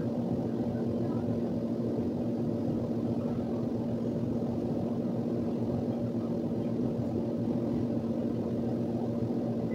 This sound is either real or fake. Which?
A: real